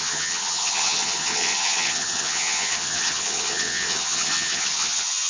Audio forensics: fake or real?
fake